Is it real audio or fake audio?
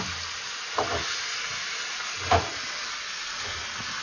real